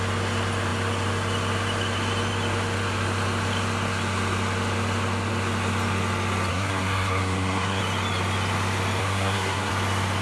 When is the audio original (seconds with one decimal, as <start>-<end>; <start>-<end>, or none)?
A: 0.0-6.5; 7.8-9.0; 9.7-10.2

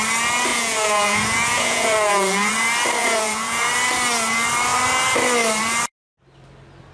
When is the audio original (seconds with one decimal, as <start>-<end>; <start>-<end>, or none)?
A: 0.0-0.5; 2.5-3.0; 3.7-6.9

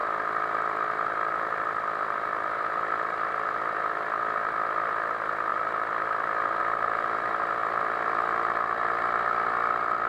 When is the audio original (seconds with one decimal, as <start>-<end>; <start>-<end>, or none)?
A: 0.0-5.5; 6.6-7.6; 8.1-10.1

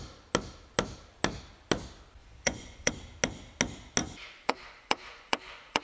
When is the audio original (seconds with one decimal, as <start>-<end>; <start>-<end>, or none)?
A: 0.0-2.2; 2.9-4.0

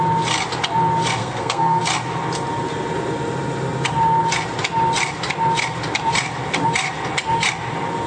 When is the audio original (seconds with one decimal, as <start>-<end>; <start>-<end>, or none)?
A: 0.0-1.2; 1.8-8.1

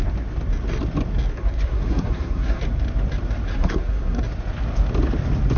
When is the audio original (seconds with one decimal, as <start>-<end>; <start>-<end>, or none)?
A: 0.0-1.3; 2.6-3.5; 4.2-5.6

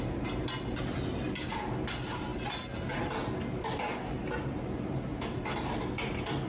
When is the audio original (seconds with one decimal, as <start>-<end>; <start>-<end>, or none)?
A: 0.0-6.5

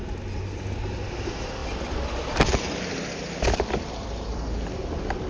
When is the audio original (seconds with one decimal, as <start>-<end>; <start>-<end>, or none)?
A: 0.0-5.3